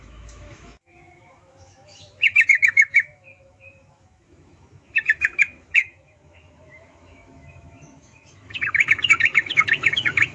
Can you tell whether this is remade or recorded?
remade